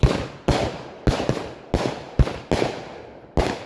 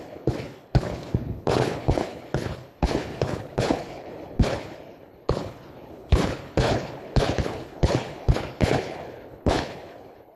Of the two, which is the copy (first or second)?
second